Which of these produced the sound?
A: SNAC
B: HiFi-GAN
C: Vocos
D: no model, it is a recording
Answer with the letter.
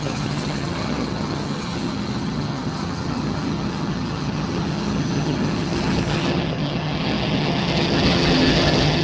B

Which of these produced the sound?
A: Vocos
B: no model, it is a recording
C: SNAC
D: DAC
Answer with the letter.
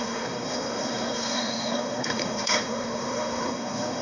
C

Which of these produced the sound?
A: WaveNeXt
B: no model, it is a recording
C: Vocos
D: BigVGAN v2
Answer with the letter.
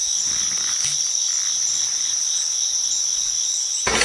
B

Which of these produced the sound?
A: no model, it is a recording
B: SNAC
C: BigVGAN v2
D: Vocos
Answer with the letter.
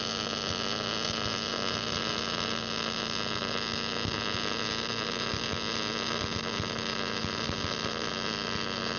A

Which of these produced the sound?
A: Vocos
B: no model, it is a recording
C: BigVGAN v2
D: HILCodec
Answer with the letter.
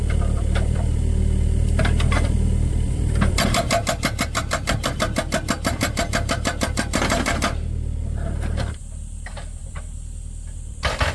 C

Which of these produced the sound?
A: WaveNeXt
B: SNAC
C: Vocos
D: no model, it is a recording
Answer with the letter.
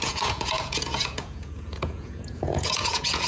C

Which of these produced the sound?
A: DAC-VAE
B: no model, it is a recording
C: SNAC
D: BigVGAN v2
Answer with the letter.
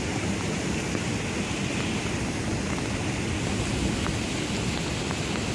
B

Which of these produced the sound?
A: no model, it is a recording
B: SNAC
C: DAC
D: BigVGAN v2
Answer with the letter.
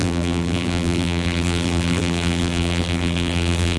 D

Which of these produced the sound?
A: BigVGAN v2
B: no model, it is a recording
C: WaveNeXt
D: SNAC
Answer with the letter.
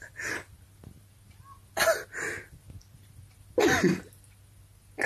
B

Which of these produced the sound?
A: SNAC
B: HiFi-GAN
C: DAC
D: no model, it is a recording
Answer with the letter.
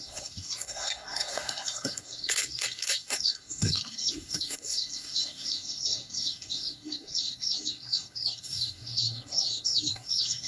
A